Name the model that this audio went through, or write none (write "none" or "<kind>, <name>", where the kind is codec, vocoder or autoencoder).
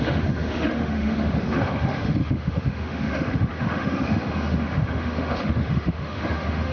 autoencoder, DAC-VAE